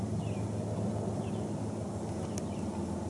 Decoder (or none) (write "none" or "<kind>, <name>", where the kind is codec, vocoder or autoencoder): none